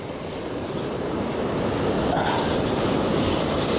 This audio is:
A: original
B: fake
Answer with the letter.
A